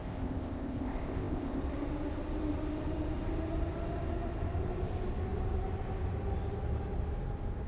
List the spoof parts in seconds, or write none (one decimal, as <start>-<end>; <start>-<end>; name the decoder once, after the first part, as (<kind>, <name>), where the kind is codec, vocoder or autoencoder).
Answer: 0.0-1.6 (codec, ZipCodec)